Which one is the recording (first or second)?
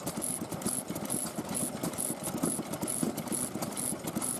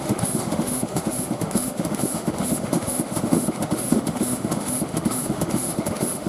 first